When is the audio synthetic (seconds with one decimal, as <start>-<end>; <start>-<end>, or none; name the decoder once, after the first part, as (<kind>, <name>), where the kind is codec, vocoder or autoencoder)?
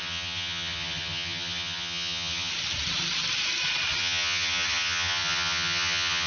0.0-2.5 (vocoder, HiFi-GAN); 4.0-6.3